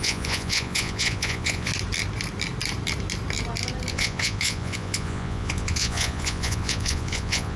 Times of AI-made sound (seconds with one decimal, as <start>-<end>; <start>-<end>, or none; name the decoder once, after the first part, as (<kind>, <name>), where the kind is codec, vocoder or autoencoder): 0.0-1.7 (vocoder, Vocos); 3.9-7.6